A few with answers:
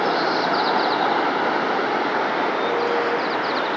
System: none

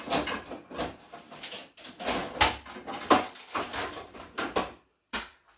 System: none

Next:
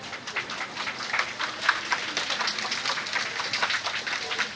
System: none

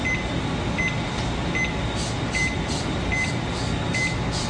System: none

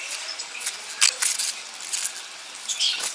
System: none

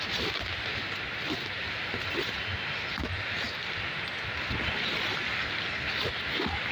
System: none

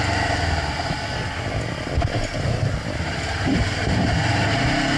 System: none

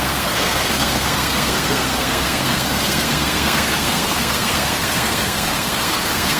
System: codec, SNAC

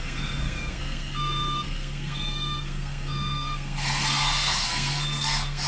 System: codec, SNAC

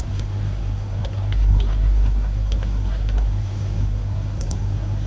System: codec, SNAC